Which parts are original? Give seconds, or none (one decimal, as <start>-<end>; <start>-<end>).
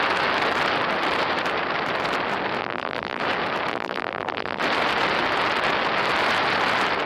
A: 0.0-2.6; 3.2-3.7; 4.6-7.1